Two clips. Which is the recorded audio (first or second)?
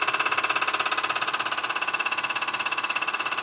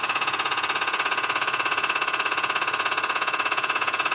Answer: first